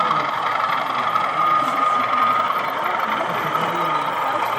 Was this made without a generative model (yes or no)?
yes